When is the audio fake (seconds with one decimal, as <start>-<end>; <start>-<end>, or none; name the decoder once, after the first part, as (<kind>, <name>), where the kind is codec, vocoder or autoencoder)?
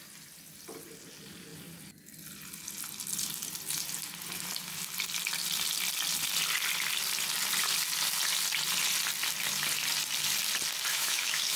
10.9-11.6 (autoencoder, DAC-VAE)